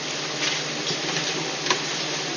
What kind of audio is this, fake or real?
real